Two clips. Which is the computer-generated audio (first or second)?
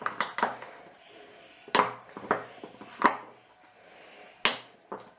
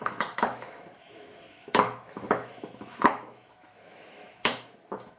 second